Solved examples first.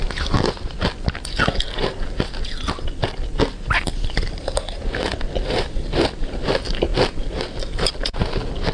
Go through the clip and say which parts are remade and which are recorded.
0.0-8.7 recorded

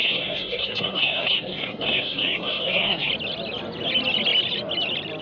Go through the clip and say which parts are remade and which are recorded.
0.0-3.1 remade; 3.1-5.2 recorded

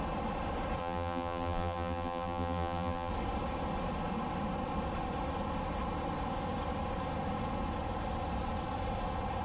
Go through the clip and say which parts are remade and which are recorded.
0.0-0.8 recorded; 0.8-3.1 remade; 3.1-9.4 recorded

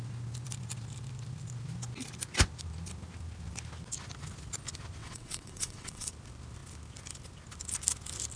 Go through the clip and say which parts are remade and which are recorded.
0.0-5.0 recorded; 5.0-6.1 remade; 6.1-8.4 recorded